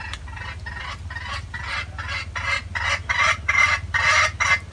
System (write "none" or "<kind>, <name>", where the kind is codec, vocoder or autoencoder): none